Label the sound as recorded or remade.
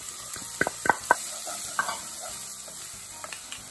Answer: recorded